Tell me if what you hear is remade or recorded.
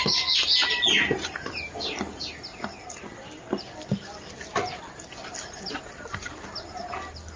recorded